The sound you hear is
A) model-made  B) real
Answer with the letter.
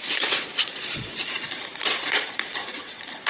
A